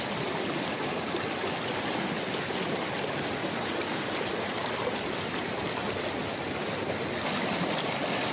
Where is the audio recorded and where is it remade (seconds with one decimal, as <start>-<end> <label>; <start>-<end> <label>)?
0.0-4.3 recorded; 4.3-4.8 remade; 4.8-8.3 recorded